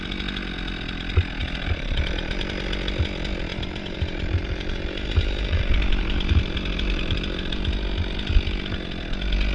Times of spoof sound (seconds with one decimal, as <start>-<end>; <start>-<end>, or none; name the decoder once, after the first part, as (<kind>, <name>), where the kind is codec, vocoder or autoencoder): 1.4-2.4 (vocoder, BigVGAN v2); 3.5-7.6